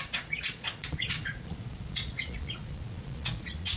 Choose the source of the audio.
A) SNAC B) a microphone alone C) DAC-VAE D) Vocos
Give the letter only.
D